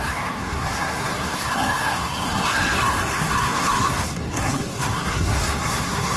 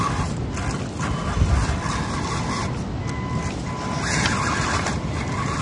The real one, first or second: second